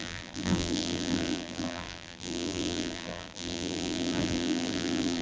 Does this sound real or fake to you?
fake